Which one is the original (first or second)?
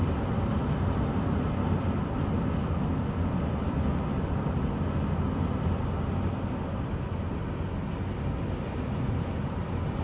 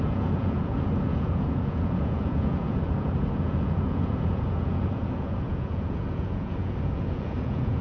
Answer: first